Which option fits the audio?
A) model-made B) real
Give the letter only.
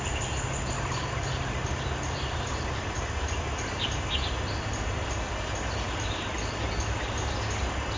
B